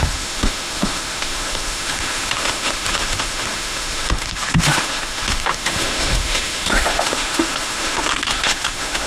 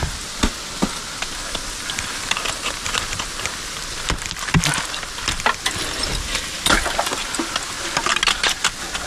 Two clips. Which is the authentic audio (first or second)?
second